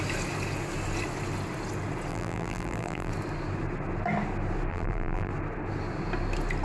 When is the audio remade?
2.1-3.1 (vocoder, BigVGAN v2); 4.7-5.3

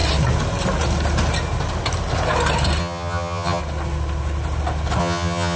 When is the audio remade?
2.8-3.6 (vocoder, HiFi-GAN); 5.0-5.6

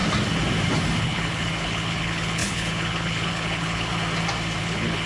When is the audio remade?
1.0-3.9 (codec, HILCodec); 4.6-5.1

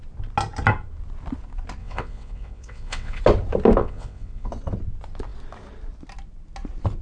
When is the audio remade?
1.8-3.2 (vocoder, WaveNeXt); 3.8-4.5

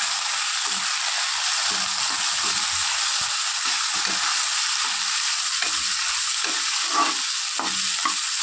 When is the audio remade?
none

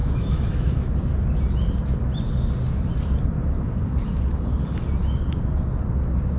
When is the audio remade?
0.0-0.9 (autoencoder, DAC-VAE)

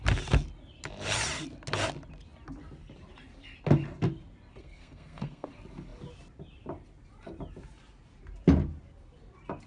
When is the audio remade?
4.6-5.5 (codec, SNAC)

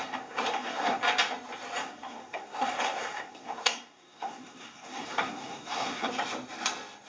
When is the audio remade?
0.0-1.0 (codec, SNAC); 1.8-6.1